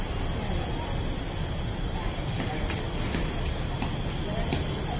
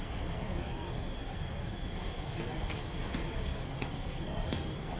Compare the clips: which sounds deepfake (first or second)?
second